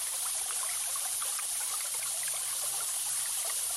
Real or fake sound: fake